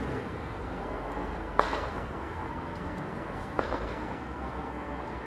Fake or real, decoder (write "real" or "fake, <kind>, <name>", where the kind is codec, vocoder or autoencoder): fake, codec, SNAC